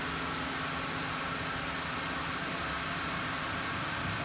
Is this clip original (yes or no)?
yes